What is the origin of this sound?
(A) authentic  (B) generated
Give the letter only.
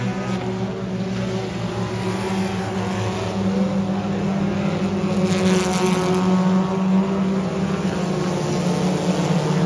A